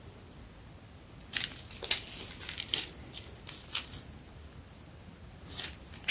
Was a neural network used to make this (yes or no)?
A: no